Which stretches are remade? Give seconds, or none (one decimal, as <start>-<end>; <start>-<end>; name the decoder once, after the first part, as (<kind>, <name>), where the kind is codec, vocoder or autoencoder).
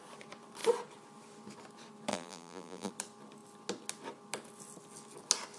2.1-2.9 (vocoder, BigVGAN v2)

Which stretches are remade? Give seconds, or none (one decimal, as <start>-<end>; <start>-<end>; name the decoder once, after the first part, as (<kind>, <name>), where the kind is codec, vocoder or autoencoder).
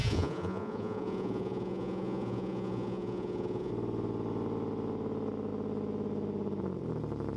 0.0-3.7 (vocoder, Vocos)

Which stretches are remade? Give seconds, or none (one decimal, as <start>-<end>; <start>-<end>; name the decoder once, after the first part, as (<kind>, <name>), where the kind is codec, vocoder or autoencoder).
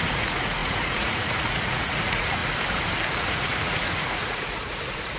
0.0-2.4 (vocoder, Vocos); 3.2-5.2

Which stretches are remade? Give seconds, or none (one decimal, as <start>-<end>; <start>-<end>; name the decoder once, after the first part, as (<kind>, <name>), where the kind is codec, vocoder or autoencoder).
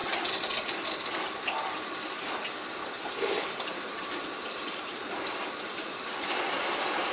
5.7-6.6 (vocoder, BigVGAN v2)